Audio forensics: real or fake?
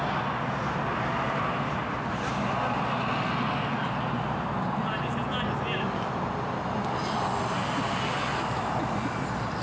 real